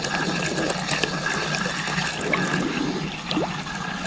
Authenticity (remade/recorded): recorded